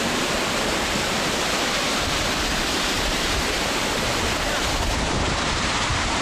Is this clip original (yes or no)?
yes